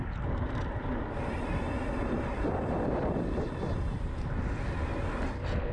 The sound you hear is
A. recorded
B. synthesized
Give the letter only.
B